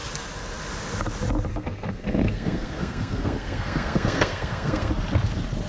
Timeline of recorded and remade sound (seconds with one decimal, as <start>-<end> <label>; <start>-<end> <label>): 0.0-1.5 recorded; 1.5-4.9 remade; 4.9-5.7 recorded